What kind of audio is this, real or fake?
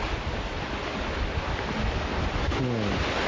real